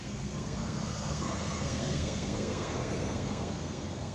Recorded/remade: remade